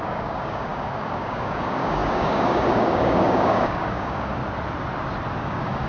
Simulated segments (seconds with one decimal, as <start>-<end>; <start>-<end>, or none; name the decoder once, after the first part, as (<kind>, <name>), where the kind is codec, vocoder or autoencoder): 0.0-4.4 (codec, DAC); 5.4-5.9